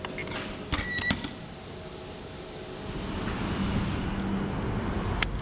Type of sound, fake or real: real